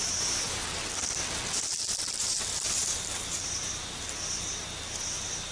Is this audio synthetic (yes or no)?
no